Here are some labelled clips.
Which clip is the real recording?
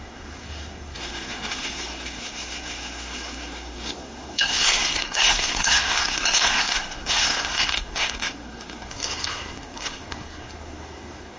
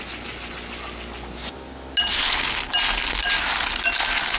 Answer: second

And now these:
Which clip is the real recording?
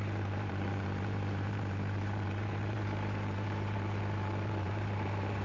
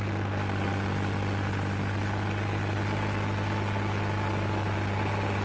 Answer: second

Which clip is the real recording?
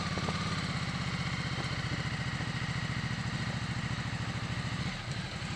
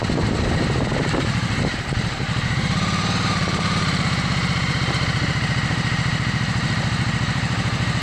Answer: first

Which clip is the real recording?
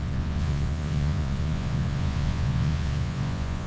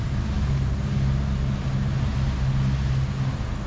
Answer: second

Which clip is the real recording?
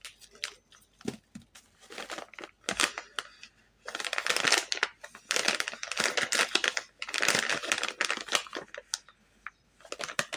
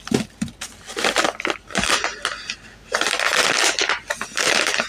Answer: first